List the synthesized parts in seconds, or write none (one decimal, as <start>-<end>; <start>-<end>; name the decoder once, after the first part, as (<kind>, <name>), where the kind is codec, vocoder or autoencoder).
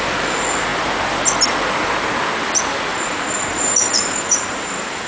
3.5-5.1 (vocoder, BigVGAN v2)